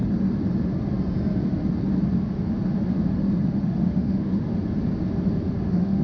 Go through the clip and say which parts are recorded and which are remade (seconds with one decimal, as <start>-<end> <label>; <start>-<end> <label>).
0.0-3.6 recorded; 3.6-4.5 remade; 4.5-5.6 recorded; 5.6-6.0 remade